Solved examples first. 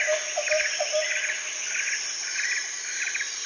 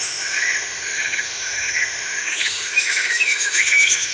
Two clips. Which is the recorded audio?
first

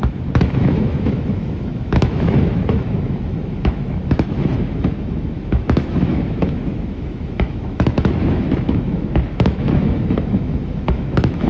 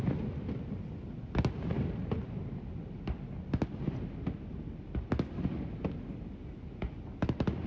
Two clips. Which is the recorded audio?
second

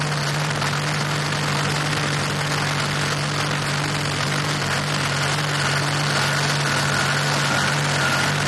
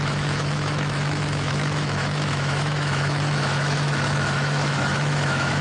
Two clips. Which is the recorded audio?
first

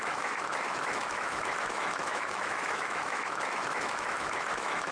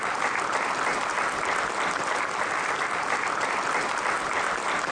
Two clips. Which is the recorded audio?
second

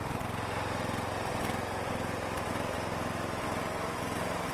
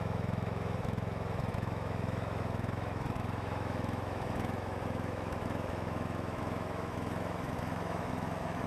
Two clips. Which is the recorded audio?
first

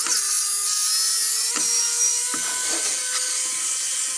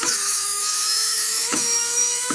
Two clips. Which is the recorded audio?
first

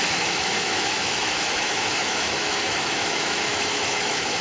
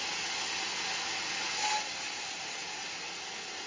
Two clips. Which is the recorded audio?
second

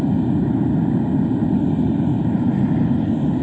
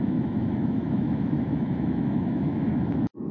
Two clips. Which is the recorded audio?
first